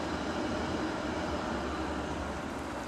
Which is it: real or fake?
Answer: real